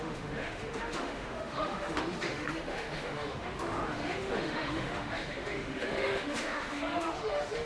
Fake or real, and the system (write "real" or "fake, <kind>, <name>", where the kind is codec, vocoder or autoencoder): fake, autoencoder, DAC-VAE